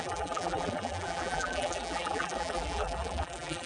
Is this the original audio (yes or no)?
no